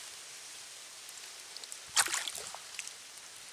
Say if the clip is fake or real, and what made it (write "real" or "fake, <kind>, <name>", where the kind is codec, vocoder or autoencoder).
real